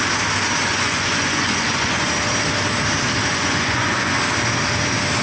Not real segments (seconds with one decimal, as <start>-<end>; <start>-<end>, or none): 0.7-2.1; 3.3-4.2